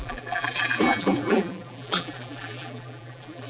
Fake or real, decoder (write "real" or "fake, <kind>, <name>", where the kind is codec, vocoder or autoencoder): fake, vocoder, BigVGAN v2